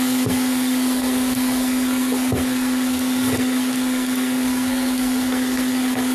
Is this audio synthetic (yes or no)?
yes